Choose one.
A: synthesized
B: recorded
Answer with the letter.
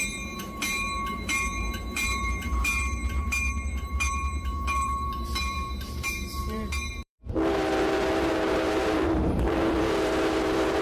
A